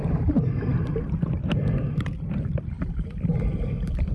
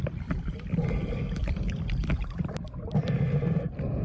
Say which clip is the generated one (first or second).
first